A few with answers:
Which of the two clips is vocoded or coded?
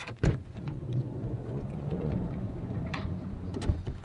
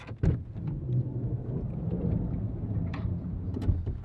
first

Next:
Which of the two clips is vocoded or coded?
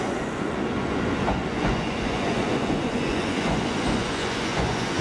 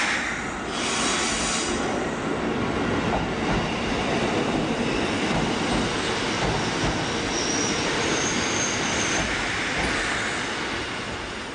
first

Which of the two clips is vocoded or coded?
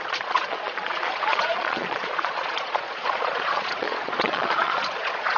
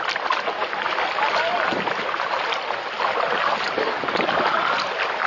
first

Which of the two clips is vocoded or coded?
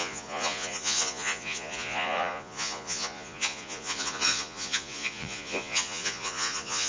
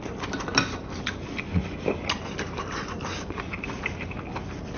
first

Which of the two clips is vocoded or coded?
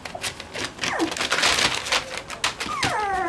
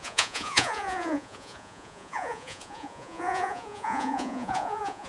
second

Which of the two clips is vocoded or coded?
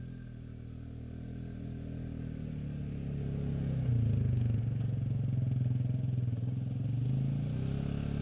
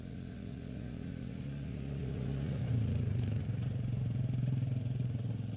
second